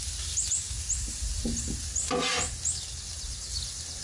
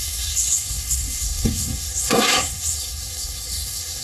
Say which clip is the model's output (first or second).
second